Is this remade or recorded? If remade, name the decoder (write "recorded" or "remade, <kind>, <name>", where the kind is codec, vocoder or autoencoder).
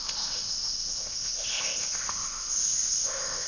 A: remade, codec, ZipCodec